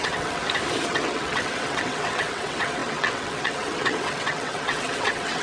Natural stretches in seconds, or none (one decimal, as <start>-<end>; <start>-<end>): 0.4-0.9